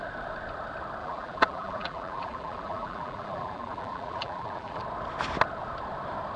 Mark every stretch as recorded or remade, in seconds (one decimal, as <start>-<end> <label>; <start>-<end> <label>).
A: 0.0-1.0 recorded; 1.0-4.8 remade; 4.8-6.4 recorded